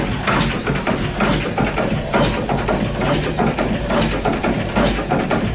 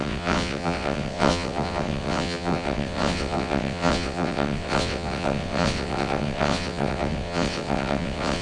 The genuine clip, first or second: first